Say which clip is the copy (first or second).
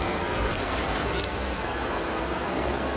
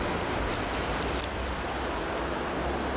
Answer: first